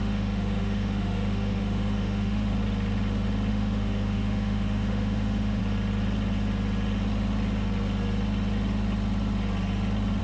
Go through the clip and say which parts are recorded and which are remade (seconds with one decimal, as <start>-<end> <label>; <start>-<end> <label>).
0.0-2.5 remade; 2.5-3.5 recorded; 3.5-5.6 remade; 5.6-10.2 recorded